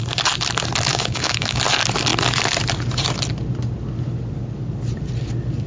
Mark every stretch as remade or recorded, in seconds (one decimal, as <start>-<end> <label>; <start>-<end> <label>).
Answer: 0.0-0.9 recorded; 0.9-1.6 remade; 1.6-5.7 recorded